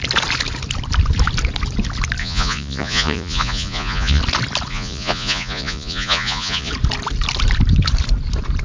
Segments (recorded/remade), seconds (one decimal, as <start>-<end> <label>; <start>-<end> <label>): 0.0-2.2 recorded; 2.2-4.2 remade; 4.2-4.7 recorded; 4.7-6.7 remade; 6.7-8.6 recorded